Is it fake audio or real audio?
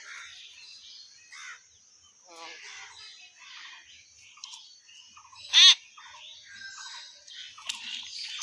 real